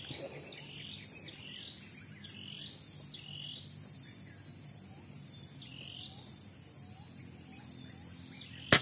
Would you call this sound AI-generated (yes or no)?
no